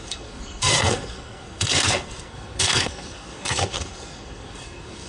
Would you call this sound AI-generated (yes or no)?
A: yes